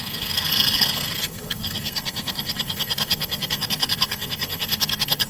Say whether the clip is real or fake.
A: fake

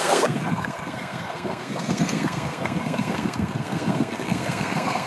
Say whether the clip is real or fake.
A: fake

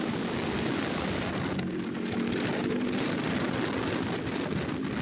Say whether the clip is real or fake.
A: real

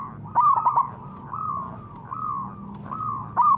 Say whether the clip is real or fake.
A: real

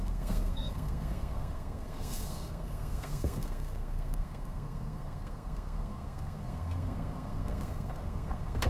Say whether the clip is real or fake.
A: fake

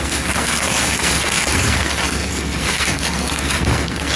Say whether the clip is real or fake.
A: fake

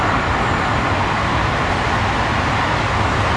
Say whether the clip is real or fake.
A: real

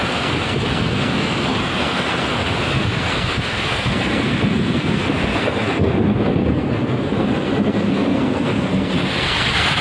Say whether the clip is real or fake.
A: fake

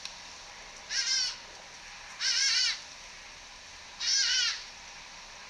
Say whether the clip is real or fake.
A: real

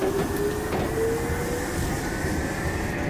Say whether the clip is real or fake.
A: real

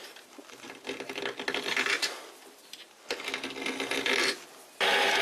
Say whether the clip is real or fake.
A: real